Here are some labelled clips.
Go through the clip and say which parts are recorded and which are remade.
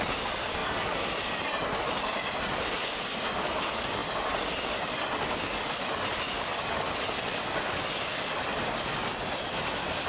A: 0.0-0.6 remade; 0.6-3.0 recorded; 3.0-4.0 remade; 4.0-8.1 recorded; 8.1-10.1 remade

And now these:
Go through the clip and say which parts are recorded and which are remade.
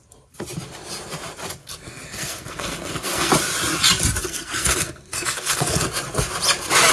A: 0.0-1.6 recorded; 1.6-3.3 remade; 3.3-4.2 recorded; 4.2-5.9 remade; 5.9-6.9 recorded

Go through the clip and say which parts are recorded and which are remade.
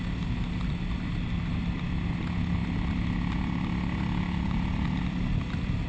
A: 0.0-5.9 recorded